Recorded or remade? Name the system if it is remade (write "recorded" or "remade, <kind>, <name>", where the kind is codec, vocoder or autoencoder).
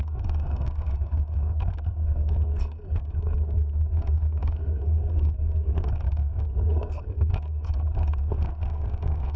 remade, codec, SNAC